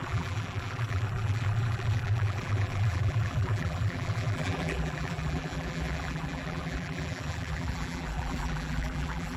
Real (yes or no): no